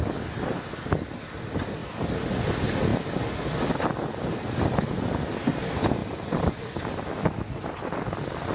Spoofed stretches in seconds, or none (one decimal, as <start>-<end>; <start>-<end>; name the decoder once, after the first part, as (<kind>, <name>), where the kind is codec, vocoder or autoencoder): none